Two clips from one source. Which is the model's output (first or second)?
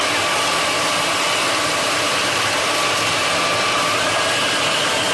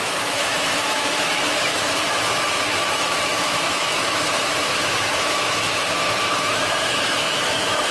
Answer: second